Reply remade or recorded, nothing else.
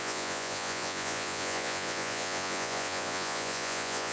remade